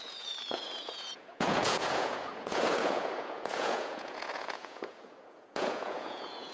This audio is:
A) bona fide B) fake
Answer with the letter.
B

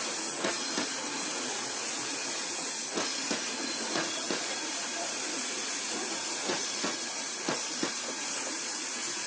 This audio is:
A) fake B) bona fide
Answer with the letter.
A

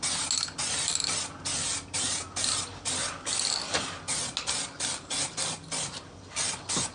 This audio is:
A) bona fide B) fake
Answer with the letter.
A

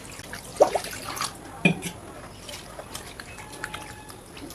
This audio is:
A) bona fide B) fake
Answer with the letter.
A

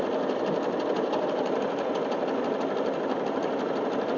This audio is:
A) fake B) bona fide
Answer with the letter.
B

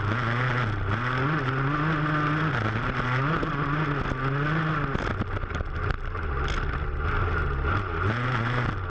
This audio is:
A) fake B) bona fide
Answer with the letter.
B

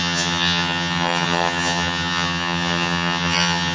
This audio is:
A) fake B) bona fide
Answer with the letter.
A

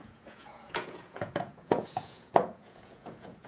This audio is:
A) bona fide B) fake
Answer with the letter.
B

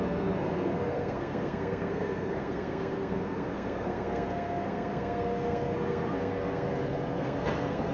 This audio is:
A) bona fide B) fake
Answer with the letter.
B